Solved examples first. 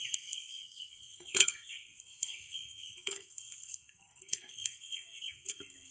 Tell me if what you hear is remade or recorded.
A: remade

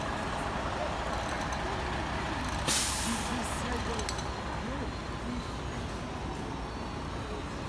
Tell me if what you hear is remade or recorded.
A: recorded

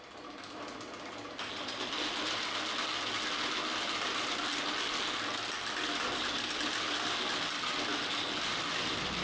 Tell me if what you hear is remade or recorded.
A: recorded